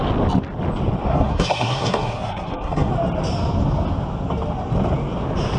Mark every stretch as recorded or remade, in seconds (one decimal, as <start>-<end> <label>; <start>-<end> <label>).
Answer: 0.0-1.1 recorded; 1.1-2.9 remade; 2.9-5.6 recorded

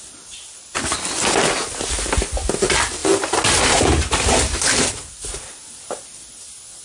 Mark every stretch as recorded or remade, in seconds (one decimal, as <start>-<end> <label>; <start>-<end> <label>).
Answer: 0.0-6.8 recorded